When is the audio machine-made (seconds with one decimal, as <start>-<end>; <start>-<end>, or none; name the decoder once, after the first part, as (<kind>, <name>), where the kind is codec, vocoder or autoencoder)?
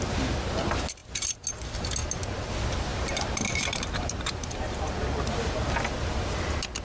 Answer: 2.0-2.5 (vocoder, BigVGAN v2); 2.9-5.1